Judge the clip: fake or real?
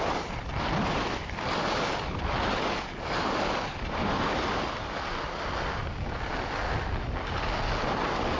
real